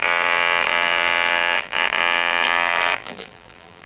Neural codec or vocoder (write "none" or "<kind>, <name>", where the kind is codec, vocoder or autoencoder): vocoder, BigVGAN v2